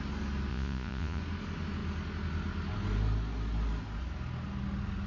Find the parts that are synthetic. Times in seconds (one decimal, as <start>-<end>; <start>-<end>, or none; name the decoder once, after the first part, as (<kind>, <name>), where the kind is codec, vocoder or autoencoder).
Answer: 0.5-1.2 (vocoder, Vocos)